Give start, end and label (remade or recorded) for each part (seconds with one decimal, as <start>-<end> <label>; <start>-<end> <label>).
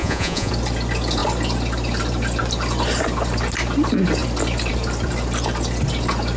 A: 0.0-0.5 remade; 0.5-6.4 recorded